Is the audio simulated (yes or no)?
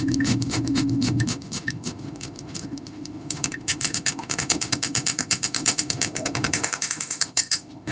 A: yes